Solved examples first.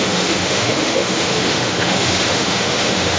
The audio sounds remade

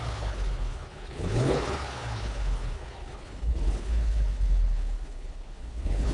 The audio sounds remade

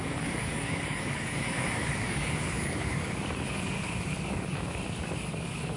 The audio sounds remade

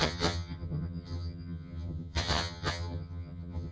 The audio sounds remade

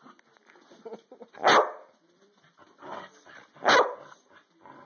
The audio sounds recorded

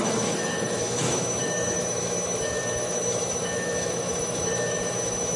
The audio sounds remade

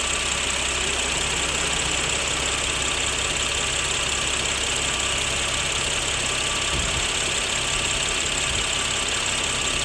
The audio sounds recorded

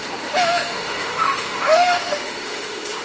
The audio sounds remade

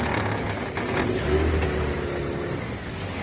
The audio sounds recorded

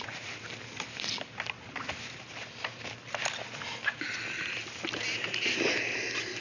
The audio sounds recorded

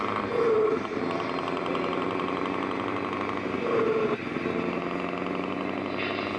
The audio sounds recorded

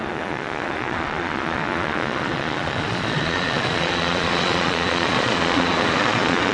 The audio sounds remade